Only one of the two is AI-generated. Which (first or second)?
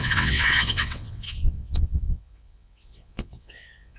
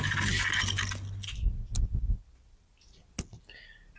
first